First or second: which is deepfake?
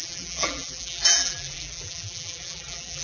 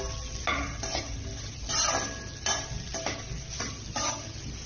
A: first